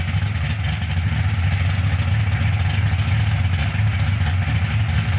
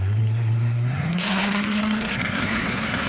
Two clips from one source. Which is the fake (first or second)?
second